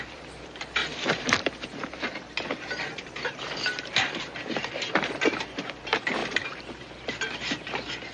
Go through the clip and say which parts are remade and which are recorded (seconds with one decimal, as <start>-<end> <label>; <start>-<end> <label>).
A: 0.0-8.1 remade